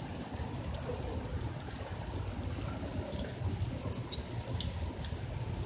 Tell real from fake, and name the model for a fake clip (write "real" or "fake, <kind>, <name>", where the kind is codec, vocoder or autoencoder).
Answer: real